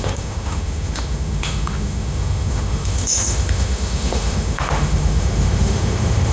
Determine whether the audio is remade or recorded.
remade